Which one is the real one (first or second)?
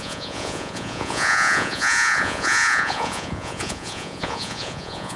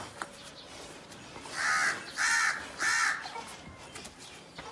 second